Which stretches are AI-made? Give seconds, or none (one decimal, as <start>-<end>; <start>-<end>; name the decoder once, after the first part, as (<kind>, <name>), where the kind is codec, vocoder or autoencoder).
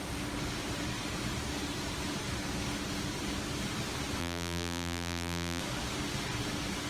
4.2-5.6 (vocoder, BigVGAN v2)